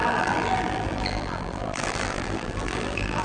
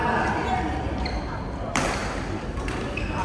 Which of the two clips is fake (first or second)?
first